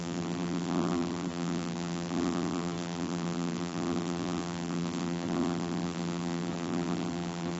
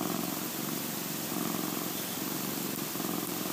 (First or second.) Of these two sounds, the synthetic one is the first